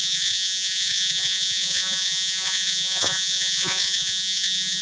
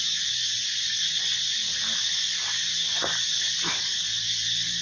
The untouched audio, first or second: second